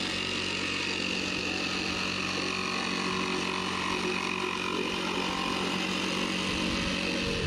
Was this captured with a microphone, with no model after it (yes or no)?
yes